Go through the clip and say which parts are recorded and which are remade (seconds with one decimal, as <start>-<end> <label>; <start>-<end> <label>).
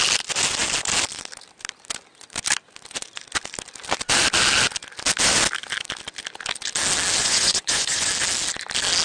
0.0-7.2 recorded; 7.2-8.1 remade; 8.1-9.0 recorded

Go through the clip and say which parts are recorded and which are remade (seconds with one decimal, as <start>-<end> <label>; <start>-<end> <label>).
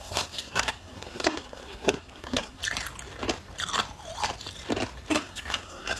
0.0-2.6 remade; 2.6-5.1 recorded; 5.1-6.0 remade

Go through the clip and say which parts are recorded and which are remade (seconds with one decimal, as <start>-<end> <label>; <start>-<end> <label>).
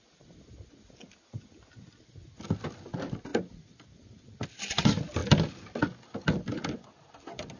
0.0-7.6 recorded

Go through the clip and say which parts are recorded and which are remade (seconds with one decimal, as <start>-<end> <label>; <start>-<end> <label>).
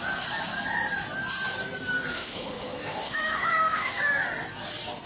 0.0-2.1 recorded; 2.1-3.9 remade; 3.9-5.1 recorded